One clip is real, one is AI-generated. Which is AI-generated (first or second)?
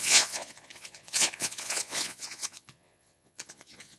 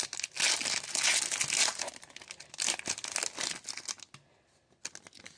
first